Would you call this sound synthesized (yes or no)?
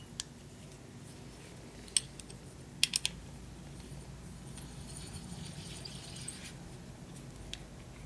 no